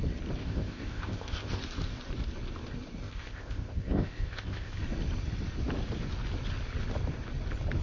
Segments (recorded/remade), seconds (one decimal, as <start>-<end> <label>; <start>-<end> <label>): 0.0-0.4 recorded; 0.4-1.6 remade; 1.6-3.0 recorded; 3.0-4.8 remade; 4.8-7.8 recorded